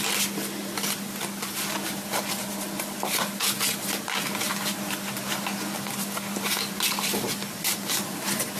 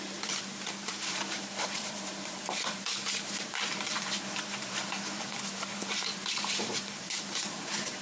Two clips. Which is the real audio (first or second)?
first